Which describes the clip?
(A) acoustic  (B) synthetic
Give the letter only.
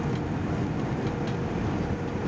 A